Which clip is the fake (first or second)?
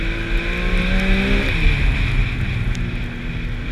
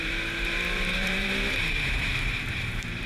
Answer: second